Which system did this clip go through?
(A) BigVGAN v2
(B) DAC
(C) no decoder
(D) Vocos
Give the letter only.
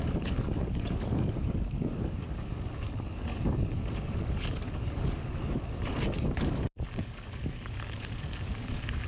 B